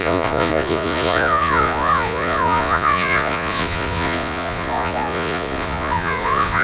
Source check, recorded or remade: remade